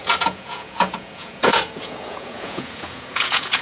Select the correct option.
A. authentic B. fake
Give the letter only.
B